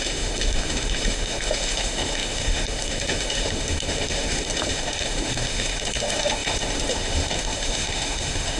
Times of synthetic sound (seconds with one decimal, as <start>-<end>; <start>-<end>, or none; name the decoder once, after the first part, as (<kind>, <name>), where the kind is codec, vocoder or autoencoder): 0.0-8.6 (autoencoder, DAC-VAE)